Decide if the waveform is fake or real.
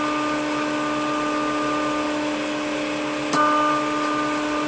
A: real